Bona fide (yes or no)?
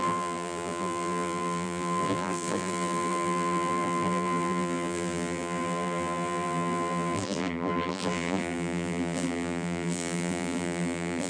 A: no